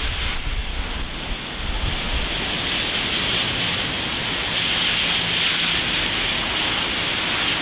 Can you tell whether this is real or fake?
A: real